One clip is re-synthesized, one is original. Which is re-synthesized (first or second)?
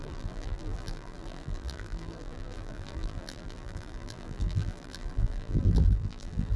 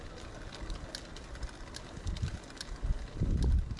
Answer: first